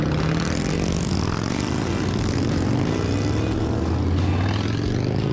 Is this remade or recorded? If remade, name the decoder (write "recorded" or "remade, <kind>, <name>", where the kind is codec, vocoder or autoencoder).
recorded